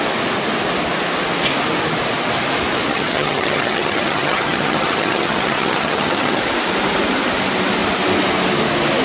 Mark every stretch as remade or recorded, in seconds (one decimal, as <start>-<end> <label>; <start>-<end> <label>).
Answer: 0.0-2.9 recorded; 2.9-6.4 remade; 6.4-9.0 recorded